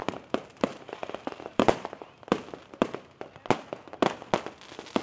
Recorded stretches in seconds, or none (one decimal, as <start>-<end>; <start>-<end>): 3.0-5.0